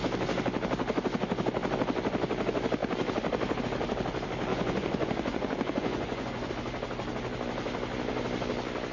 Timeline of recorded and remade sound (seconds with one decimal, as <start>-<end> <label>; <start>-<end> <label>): 0.0-4.5 recorded; 4.5-6.5 remade; 6.5-8.9 recorded